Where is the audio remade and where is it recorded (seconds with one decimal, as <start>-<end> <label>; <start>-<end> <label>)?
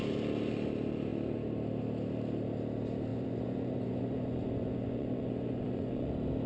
0.0-3.1 recorded; 3.1-6.1 remade; 6.1-6.5 recorded